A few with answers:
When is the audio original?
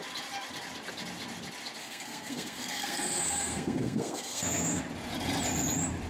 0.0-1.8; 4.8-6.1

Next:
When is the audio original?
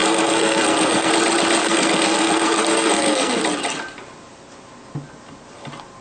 1.1-1.6; 3.4-6.0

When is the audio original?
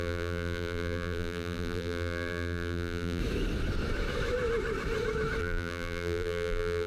3.2-5.4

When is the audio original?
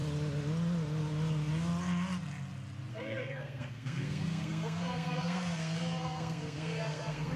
0.0-2.9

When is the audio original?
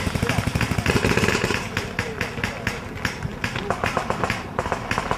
0.0-5.2